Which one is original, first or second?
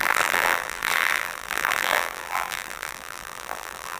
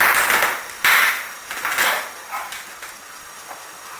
second